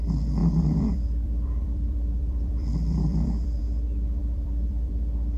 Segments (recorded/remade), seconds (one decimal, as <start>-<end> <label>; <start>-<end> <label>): 0.0-0.4 recorded; 0.4-3.6 remade; 3.6-4.2 recorded; 4.2-4.9 remade; 4.9-5.4 recorded